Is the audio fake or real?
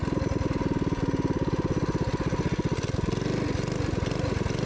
real